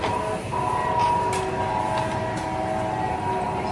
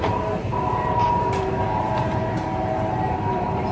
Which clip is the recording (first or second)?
first